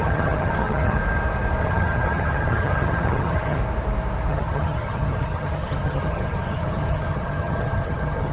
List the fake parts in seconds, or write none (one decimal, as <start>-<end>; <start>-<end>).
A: 0.0-1.0; 1.6-3.6; 4.3-8.3